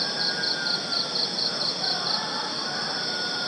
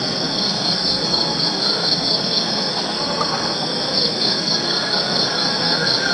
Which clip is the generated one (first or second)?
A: second